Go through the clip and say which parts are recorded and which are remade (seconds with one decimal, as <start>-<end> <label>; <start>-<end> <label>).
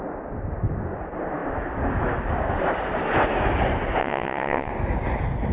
0.0-4.0 recorded; 4.0-4.7 remade; 4.7-5.5 recorded